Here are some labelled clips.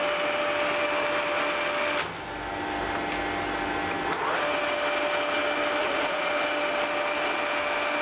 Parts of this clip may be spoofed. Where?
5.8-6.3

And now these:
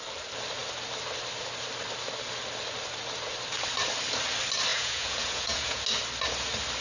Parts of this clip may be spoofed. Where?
4.7-5.8